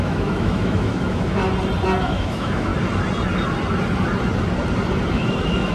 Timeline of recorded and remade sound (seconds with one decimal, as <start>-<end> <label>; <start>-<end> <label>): 0.0-1.4 remade; 1.4-2.0 recorded; 2.0-2.7 remade; 2.7-5.1 recorded; 5.1-5.7 remade